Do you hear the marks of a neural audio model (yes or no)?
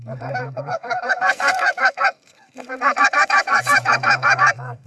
yes